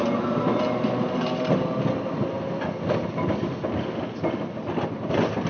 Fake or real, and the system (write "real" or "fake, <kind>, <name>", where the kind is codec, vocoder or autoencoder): real